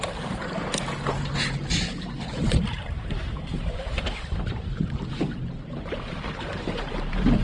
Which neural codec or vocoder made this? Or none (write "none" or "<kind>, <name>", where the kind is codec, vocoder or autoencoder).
vocoder, BigVGAN v2